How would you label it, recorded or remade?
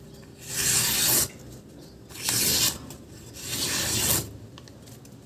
recorded